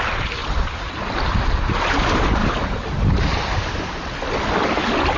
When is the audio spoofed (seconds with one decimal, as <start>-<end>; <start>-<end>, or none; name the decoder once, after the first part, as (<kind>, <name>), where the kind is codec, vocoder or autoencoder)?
2.4-4.0 (vocoder, BigVGAN v2)